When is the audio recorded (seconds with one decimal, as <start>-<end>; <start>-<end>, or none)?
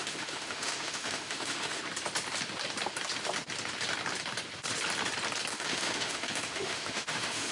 1.8-5.5